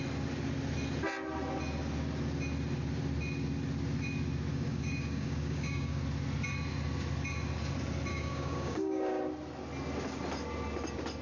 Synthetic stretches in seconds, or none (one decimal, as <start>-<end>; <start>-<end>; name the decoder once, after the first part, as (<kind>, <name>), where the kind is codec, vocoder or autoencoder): 4.5-6.0 (codec, DAC); 8.1-9.2